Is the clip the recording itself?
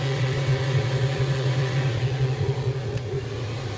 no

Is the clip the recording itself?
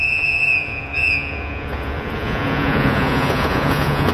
no